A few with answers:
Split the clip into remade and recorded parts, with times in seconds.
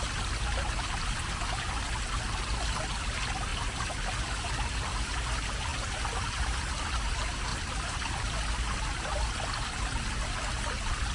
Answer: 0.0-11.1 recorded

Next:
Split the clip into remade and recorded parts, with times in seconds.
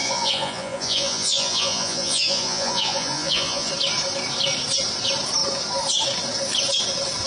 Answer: 0.0-3.7 remade; 3.7-7.3 recorded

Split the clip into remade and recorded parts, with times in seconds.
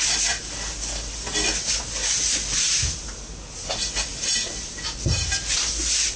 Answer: 0.0-6.2 recorded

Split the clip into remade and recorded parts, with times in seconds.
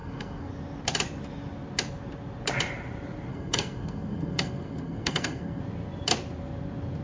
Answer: 0.0-0.5 remade; 0.5-3.3 recorded; 3.3-5.6 remade; 5.6-7.0 recorded